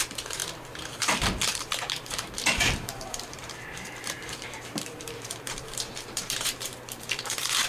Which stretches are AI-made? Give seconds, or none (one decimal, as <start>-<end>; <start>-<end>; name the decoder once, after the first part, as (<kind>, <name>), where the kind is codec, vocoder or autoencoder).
0.0-7.7 (vocoder, BigVGAN v2)